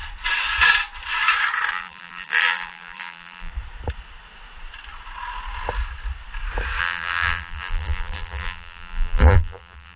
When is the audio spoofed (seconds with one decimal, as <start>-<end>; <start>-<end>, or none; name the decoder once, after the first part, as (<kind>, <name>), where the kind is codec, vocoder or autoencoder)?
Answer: 1.7-3.5 (vocoder, BigVGAN v2); 6.8-10.0